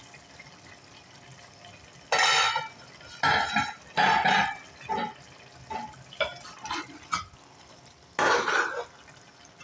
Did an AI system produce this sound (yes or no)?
no